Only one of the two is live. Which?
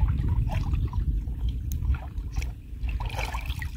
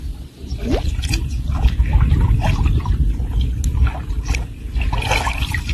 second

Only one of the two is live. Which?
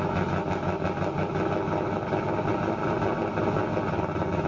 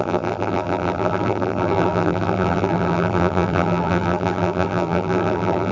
first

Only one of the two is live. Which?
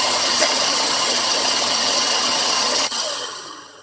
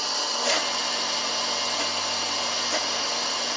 second